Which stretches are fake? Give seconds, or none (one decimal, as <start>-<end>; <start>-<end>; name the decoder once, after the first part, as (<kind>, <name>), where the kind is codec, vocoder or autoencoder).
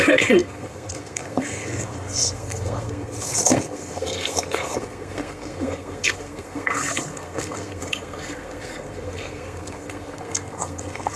0.0-11.2 (codec, SNAC)